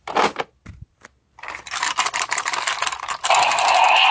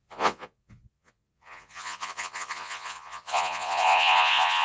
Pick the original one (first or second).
first